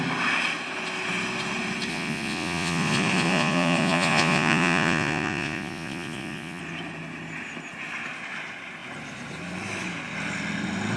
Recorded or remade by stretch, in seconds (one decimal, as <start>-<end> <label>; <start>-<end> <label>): 0.0-1.9 recorded; 1.9-6.6 remade; 6.6-11.0 recorded